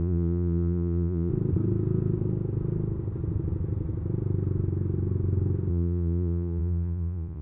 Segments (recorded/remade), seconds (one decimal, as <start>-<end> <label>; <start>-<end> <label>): 0.0-1.3 remade; 1.3-5.7 recorded; 5.7-7.4 remade